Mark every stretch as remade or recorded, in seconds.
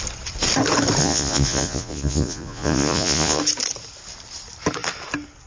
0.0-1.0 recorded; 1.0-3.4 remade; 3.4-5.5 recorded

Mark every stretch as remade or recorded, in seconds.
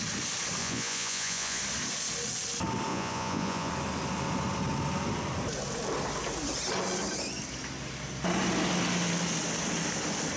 0.0-0.6 recorded; 0.6-1.6 remade; 1.6-2.9 recorded; 2.9-3.7 remade; 3.7-10.4 recorded